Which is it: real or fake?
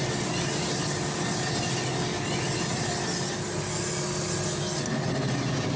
real